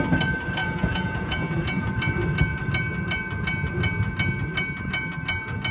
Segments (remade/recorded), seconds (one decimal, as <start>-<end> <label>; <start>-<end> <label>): 0.0-0.6 recorded; 0.6-1.9 remade; 1.9-5.7 recorded